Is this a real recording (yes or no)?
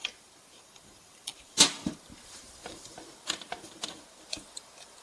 no